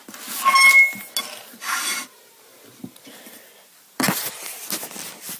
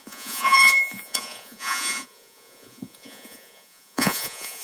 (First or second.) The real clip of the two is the first